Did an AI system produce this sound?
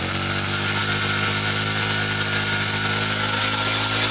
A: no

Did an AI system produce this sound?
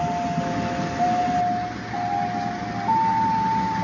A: no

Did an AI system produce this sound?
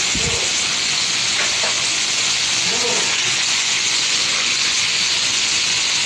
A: yes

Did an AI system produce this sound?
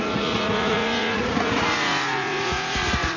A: yes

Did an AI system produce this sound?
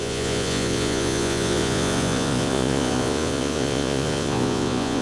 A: yes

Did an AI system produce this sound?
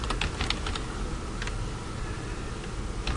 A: no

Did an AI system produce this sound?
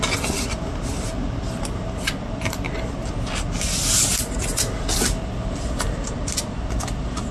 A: no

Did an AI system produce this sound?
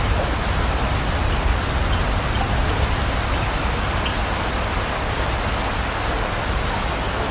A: no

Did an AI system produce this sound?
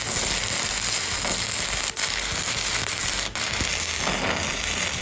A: no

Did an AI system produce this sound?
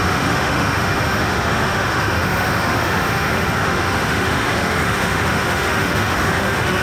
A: yes